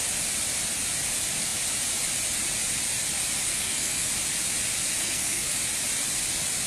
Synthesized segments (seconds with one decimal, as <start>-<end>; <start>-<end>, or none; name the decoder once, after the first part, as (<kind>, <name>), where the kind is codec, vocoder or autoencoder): 3.5-4.1 (codec, SNAC); 5.0-5.5